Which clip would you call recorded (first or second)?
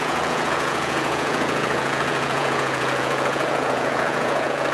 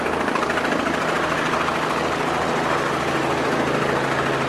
second